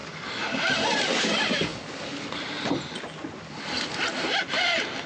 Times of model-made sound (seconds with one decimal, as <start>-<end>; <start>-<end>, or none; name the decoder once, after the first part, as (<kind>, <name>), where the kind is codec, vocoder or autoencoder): 1.1-1.7 (vocoder, BigVGAN v2)

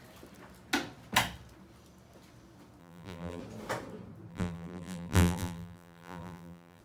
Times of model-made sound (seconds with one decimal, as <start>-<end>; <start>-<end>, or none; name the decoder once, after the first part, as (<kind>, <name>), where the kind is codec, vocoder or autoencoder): 2.8-3.4 (vocoder, BigVGAN v2); 4.3-6.8

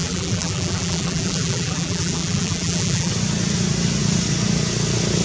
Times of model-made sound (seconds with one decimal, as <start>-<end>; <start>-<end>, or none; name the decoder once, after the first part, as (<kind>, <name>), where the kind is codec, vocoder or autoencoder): 0.0-3.1 (vocoder, BigVGAN v2)

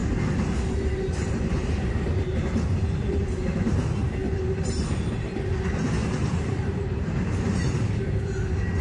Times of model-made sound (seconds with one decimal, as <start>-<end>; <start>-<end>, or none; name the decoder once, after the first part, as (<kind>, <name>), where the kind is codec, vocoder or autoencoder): 1.6-3.2 (vocoder, BigVGAN v2); 6.0-7.7

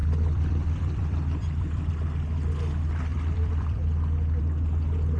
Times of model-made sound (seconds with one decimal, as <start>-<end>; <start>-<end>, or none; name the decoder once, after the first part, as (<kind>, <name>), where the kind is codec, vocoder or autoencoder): 0.0-1.9 (vocoder, BigVGAN v2); 3.1-4.4

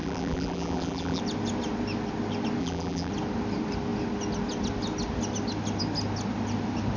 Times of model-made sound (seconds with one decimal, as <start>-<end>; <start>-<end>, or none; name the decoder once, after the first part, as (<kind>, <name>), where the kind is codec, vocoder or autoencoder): 0.0-1.2 (vocoder, BigVGAN v2); 2.6-3.1

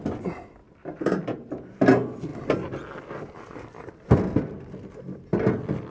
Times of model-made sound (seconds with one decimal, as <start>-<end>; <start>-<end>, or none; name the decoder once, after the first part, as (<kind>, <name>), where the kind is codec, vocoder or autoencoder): 0.6-1.5 (vocoder, BigVGAN v2)

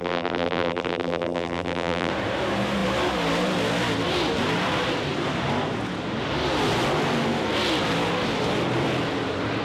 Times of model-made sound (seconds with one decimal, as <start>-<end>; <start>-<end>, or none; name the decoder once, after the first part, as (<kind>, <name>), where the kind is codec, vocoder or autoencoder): 0.0-2.1 (vocoder, BigVGAN v2)